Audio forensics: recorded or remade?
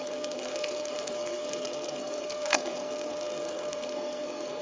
remade